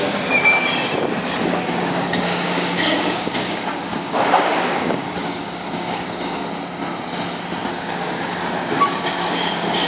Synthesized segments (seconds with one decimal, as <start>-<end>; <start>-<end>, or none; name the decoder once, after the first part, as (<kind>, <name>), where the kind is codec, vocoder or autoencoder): 0.0-0.8 (codec, DAC); 1.4-6.4; 7.7-9.9